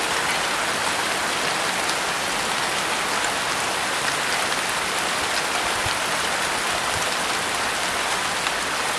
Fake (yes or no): no